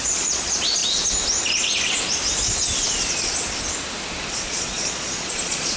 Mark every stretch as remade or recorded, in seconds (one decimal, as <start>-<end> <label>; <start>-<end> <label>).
0.0-0.8 remade; 0.8-4.3 recorded; 4.3-5.8 remade

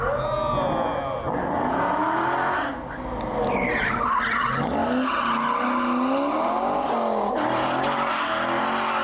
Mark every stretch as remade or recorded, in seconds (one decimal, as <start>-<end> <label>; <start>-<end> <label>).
0.0-9.0 recorded

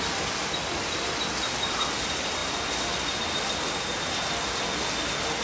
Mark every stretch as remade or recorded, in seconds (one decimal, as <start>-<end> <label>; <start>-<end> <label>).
0.0-5.4 recorded

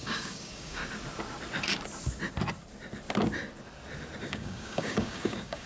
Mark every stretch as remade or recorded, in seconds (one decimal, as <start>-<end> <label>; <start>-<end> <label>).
0.0-0.8 remade; 0.8-4.2 recorded; 4.2-5.7 remade

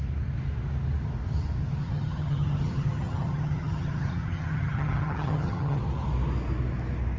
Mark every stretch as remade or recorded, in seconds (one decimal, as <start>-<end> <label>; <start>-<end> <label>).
0.0-1.8 recorded; 1.8-5.8 remade; 5.8-7.2 recorded

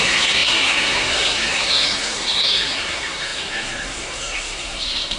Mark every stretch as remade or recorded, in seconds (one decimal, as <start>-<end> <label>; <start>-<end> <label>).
0.0-5.2 remade

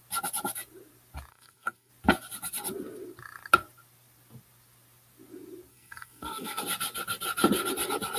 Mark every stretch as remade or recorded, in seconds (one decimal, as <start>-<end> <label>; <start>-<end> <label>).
0.0-1.3 recorded; 1.3-1.9 remade; 1.9-5.7 recorded; 5.7-6.6 remade; 6.6-8.2 recorded

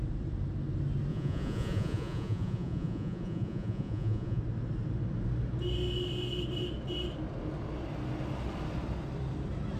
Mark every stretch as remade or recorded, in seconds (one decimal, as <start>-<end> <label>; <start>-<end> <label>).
0.0-1.1 recorded; 1.1-4.4 remade; 4.4-9.8 recorded